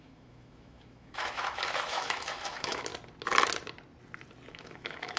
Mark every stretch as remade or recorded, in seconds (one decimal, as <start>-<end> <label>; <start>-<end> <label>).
0.0-2.9 remade; 2.9-4.5 recorded; 4.5-5.2 remade